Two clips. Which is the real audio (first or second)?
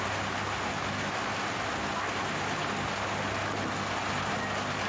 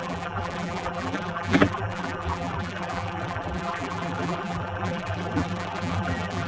first